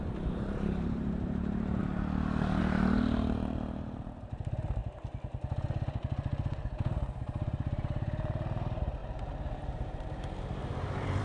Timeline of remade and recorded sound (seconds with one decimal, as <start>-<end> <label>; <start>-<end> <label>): 0.0-1.8 remade; 1.8-2.6 recorded; 2.6-4.8 remade; 4.8-7.2 recorded; 7.2-11.2 remade